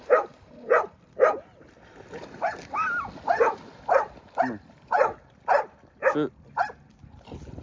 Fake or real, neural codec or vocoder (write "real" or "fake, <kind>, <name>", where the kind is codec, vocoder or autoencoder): real